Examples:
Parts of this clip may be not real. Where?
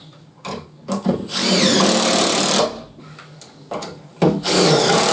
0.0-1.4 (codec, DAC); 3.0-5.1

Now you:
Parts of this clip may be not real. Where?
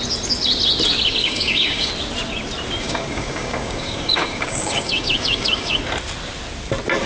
1.2-1.9 (codec, DAC); 2.8-5.8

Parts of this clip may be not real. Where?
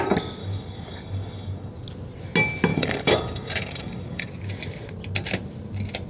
0.4-1.7 (codec, DAC); 2.7-4.3